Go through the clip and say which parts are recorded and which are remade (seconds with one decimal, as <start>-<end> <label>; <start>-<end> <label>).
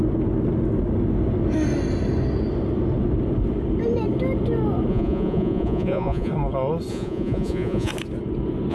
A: 0.0-4.9 recorded; 4.9-6.3 remade; 6.3-6.9 recorded; 6.9-7.9 remade; 7.9-8.7 recorded